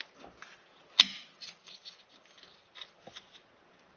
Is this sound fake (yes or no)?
no